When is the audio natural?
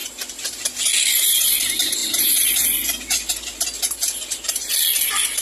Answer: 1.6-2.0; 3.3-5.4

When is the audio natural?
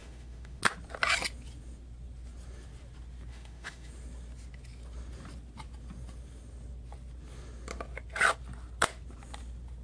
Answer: 0.6-3.3; 3.9-9.8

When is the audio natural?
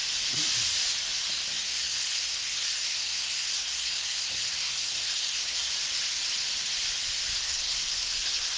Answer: 0.0-1.5; 5.7-7.4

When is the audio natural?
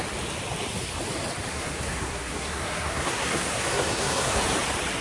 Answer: 0.0-1.5; 4.4-5.0